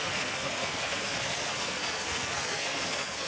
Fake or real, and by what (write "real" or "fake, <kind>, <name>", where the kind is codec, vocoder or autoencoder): fake, codec, SNAC